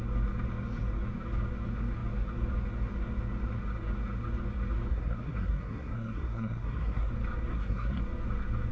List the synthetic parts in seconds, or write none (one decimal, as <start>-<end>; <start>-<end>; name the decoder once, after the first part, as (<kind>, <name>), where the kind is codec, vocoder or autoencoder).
4.9-7.1 (codec, SNAC); 7.5-8.0